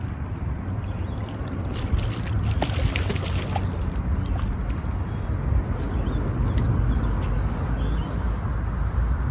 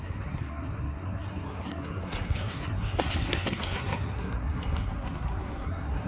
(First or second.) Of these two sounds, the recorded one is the first